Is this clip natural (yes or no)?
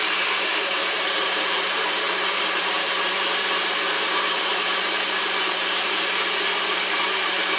no